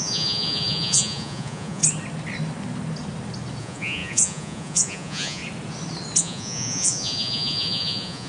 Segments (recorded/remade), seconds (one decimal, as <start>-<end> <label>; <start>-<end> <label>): 0.0-1.8 remade; 1.8-3.6 recorded; 3.6-5.4 remade; 5.4-6.2 recorded; 6.2-8.3 remade